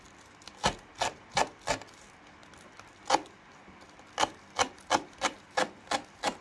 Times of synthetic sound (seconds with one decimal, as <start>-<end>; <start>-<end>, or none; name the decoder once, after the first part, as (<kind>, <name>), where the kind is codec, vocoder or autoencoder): none